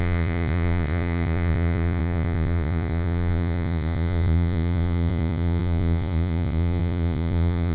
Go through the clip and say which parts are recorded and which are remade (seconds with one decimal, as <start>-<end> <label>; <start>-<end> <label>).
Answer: 0.0-7.7 remade